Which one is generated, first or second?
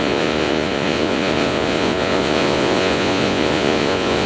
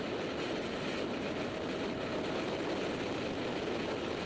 first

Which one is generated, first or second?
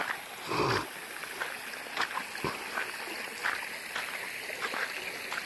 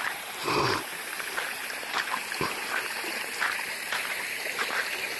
second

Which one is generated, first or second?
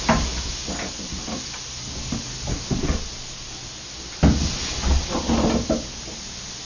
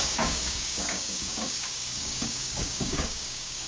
second